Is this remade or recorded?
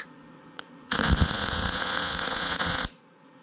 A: remade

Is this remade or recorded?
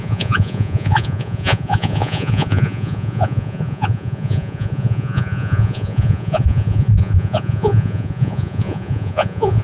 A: remade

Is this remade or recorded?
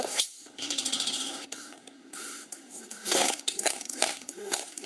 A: remade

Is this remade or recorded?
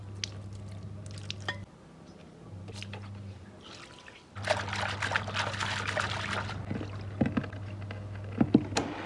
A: recorded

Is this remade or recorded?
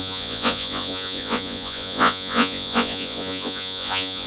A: remade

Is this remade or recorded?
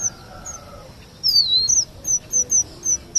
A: recorded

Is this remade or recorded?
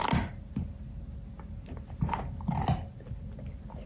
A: recorded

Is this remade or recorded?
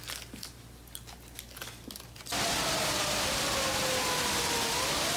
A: recorded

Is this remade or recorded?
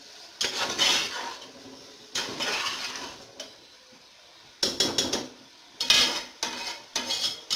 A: recorded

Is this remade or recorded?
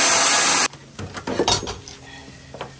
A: recorded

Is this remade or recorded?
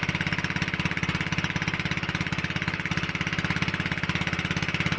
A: recorded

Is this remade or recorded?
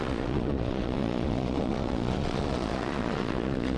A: remade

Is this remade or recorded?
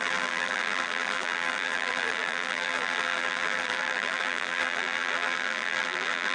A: remade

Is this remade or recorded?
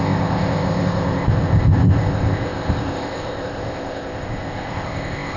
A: remade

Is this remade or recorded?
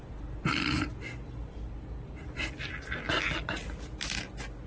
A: recorded